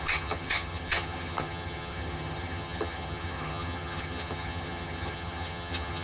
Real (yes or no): no